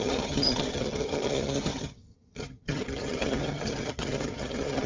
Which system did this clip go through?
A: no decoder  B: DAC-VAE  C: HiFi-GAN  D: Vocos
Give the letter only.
C